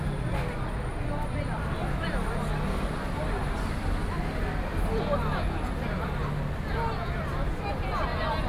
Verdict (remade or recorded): recorded